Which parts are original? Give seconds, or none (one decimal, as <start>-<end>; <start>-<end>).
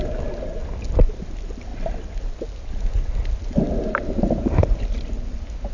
0.0-5.7